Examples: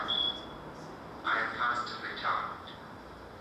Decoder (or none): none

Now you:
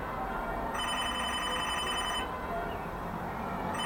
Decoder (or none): vocoder, BigVGAN v2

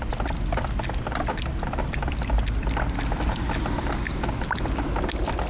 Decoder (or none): none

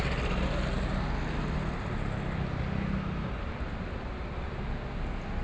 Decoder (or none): none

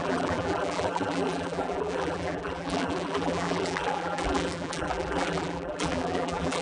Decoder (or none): vocoder, BigVGAN v2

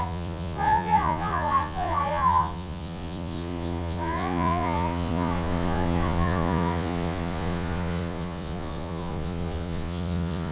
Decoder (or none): vocoder, Vocos